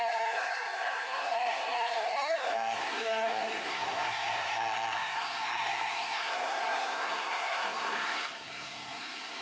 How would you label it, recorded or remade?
remade